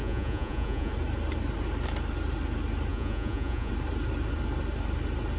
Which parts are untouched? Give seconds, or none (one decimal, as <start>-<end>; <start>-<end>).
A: 0.9-2.9; 3.7-5.4